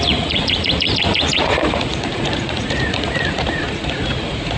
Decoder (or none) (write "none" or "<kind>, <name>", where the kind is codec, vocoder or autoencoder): vocoder, Vocos